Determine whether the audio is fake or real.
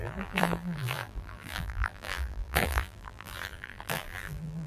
fake